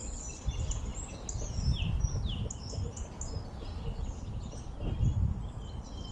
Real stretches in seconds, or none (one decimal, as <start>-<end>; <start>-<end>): 0.0-6.1